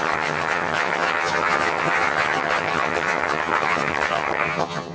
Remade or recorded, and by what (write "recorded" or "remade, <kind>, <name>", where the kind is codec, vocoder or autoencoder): remade, vocoder, HiFi-GAN